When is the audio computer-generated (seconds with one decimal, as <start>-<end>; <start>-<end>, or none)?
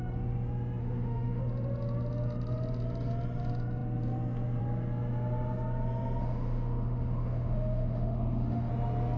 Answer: 0.8-1.4; 6.2-8.7